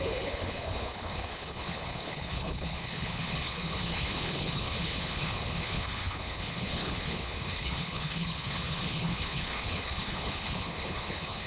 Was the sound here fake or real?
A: fake